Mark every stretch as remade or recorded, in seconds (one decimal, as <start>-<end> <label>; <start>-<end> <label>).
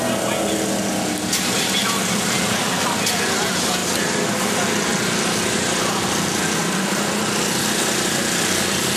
0.0-9.0 recorded